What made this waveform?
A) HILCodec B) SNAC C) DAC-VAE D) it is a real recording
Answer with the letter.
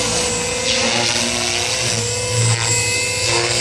D